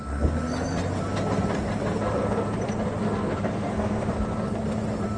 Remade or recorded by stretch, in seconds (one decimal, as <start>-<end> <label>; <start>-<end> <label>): 0.0-3.0 recorded; 3.0-4.1 remade; 4.1-5.2 recorded